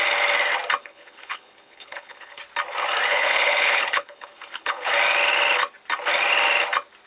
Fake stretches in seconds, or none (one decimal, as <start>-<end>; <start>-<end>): 0.8-2.4; 3.1-4.9